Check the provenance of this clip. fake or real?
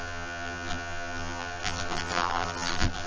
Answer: fake